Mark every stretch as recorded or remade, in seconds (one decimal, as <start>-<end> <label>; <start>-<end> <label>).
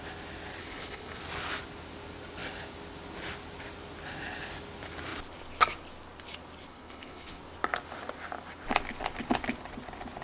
0.0-0.6 recorded; 0.6-1.2 remade; 1.2-6.7 recorded; 6.7-7.4 remade; 7.4-10.2 recorded